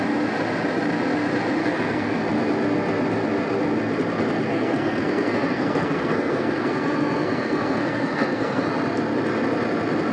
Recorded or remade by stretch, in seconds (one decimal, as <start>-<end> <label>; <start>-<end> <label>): 0.0-1.6 recorded; 1.6-2.2 remade; 2.2-4.5 recorded; 4.5-8.6 remade; 8.6-10.1 recorded